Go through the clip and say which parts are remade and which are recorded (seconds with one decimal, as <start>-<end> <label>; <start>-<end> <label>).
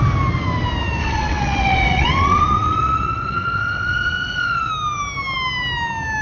0.0-1.0 recorded; 1.0-4.7 remade; 4.7-6.2 recorded